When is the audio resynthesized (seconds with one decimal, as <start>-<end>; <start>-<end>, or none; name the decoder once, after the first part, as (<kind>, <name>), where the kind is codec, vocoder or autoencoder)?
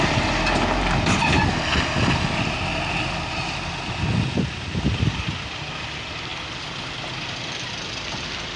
none